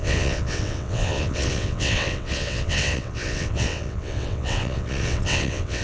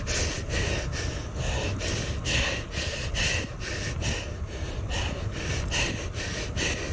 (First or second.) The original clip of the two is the second